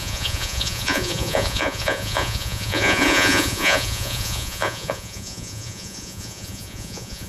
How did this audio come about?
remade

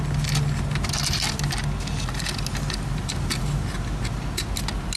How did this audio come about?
recorded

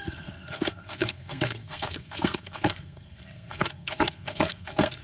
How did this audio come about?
remade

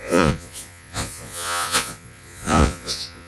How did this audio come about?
remade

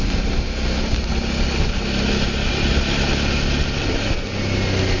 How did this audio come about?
recorded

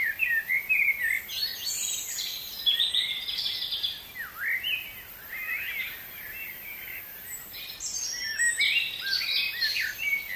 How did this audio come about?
recorded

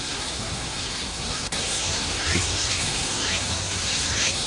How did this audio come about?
remade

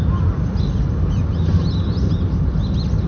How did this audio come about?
recorded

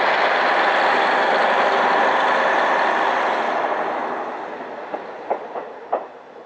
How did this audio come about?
recorded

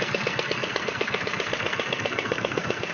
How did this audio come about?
remade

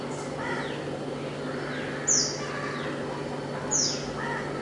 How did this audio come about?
recorded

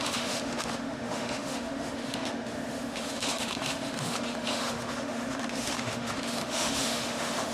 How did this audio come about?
remade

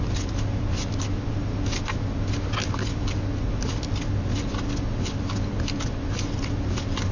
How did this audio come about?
recorded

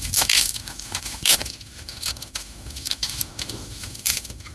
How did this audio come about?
remade